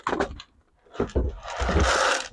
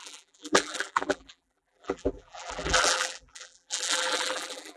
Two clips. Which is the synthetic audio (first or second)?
second